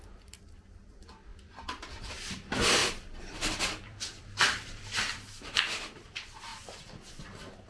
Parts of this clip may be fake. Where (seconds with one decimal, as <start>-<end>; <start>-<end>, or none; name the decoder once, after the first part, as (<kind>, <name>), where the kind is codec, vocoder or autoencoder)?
2.8-6.1 (vocoder, BigVGAN v2)